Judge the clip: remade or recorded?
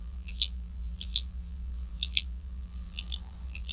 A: remade